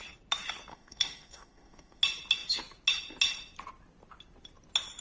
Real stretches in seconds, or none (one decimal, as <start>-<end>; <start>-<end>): 0.0-0.7; 2.0-5.0